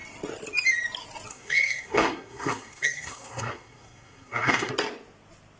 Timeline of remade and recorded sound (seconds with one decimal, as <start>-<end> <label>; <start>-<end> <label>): 0.0-1.3 recorded; 1.3-4.7 remade; 4.7-5.6 recorded